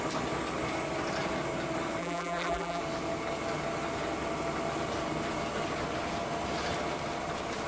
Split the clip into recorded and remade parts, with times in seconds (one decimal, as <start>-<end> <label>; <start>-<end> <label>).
0.0-2.0 recorded; 2.0-2.8 remade; 2.8-7.7 recorded